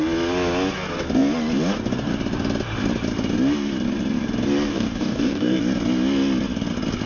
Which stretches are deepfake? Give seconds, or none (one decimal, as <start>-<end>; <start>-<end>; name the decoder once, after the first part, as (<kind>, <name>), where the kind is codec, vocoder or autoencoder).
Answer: 4.7-5.6 (codec, DAC)